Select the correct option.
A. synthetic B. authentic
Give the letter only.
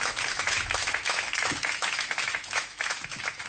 A